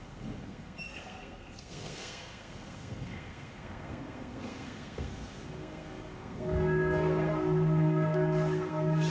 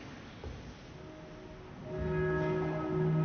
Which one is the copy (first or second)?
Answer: first